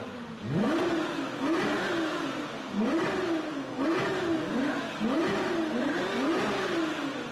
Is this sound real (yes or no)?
yes